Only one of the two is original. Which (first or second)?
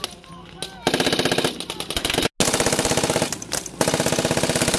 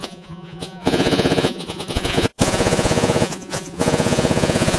first